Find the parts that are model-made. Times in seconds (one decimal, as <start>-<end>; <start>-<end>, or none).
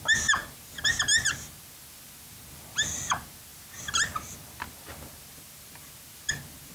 none